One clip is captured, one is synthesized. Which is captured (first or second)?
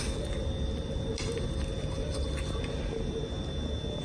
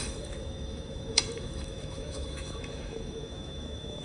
first